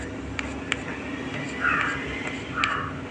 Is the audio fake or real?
real